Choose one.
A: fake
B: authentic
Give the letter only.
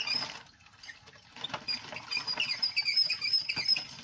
B